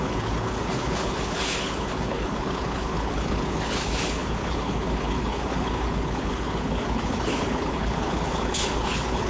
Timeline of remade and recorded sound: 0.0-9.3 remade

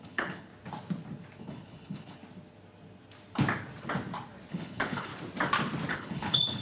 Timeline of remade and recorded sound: 0.0-0.5 remade; 0.5-1.4 recorded; 1.4-2.2 remade; 2.2-4.5 recorded; 4.5-5.1 remade; 5.1-5.9 recorded; 5.9-6.6 remade

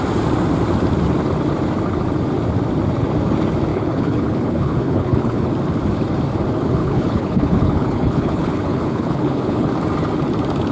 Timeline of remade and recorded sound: 0.0-3.7 recorded; 3.7-5.5 remade; 5.5-6.8 recorded; 6.8-9.7 remade; 9.7-10.7 recorded